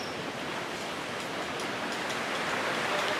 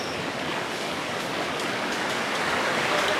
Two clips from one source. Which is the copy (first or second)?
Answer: second